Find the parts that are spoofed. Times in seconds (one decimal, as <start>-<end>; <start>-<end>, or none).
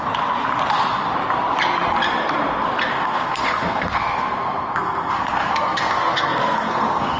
2.9-7.2